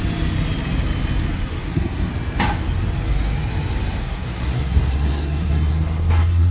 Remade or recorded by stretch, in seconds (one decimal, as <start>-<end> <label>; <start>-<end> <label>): 0.0-1.3 recorded; 1.3-2.1 remade; 2.1-4.0 recorded; 4.0-6.5 remade